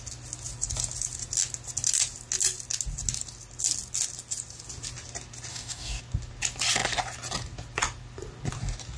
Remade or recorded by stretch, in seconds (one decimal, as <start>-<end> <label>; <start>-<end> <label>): 0.0-5.5 recorded; 5.5-6.0 remade; 6.0-9.0 recorded